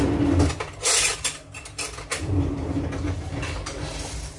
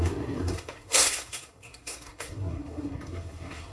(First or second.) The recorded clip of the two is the first